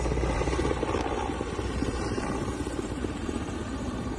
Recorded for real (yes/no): no